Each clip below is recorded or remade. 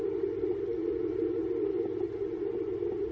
recorded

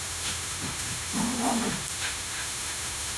remade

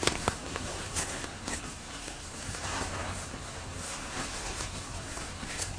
remade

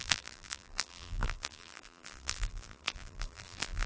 remade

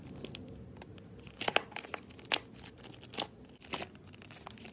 recorded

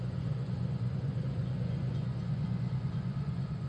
remade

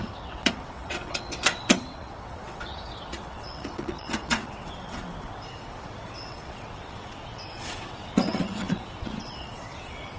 remade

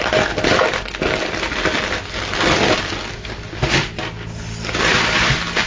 recorded